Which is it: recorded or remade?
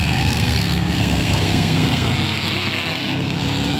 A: remade